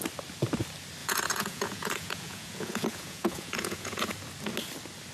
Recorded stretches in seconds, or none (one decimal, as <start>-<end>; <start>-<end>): 0.0-1.0; 4.1-5.1